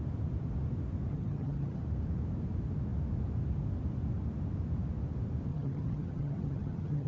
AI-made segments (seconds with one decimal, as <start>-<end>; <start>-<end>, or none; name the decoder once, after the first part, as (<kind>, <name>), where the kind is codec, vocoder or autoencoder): 1.1-1.8 (vocoder, HiFi-GAN); 5.5-7.1

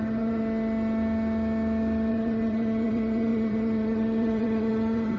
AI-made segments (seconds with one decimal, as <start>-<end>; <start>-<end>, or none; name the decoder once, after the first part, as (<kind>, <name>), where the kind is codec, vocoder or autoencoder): 0.0-0.4 (vocoder, HiFi-GAN); 2.1-5.2

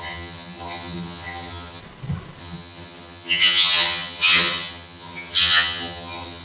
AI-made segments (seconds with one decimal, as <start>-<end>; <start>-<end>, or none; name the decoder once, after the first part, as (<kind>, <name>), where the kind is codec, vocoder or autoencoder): 0.0-1.8 (vocoder, HiFi-GAN); 2.4-6.4

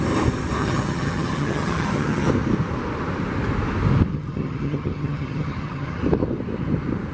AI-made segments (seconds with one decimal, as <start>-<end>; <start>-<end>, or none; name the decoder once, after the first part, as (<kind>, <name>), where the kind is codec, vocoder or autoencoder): 0.6-2.3 (vocoder, HiFi-GAN); 4.1-6.0

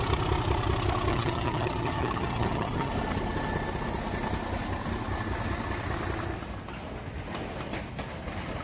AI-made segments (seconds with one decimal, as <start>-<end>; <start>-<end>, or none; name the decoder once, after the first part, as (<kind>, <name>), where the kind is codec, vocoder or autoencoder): 1.1-2.9 (vocoder, HiFi-GAN)

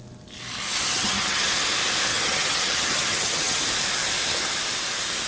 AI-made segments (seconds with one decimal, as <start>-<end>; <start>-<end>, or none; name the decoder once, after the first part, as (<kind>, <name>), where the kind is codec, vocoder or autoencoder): 0.9-1.5 (vocoder, HiFi-GAN); 2.1-3.6

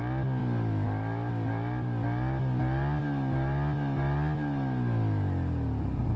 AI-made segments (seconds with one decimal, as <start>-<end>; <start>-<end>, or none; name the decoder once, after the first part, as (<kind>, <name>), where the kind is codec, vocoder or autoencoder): none